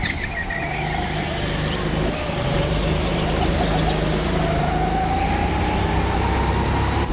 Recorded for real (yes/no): yes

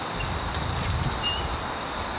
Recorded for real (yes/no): yes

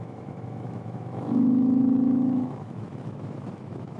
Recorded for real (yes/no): no